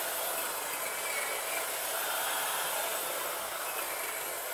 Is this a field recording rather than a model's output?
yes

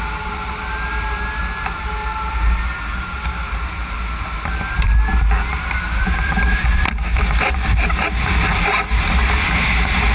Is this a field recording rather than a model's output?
yes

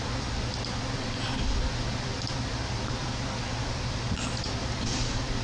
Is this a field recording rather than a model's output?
no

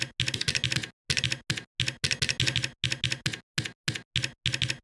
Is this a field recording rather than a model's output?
yes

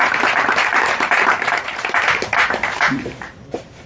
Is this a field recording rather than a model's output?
no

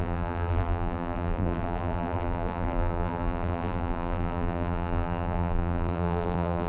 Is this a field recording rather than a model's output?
no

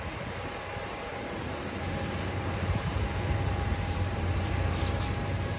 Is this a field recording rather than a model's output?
no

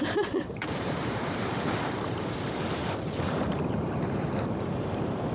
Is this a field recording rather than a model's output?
no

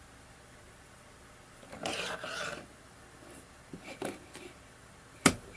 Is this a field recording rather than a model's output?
no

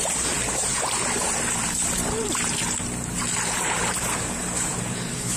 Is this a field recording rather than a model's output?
no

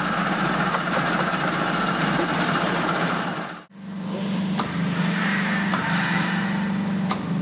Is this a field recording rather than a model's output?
no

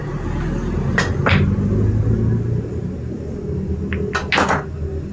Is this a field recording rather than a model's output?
yes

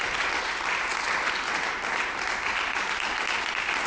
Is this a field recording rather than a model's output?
yes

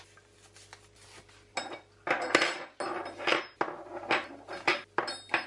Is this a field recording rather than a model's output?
yes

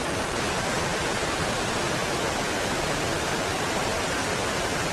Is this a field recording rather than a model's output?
yes